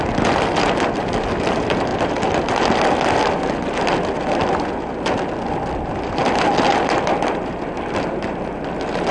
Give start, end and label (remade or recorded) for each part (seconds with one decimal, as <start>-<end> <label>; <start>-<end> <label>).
0.0-9.1 recorded